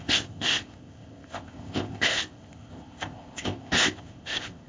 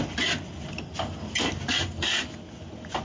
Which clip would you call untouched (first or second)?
second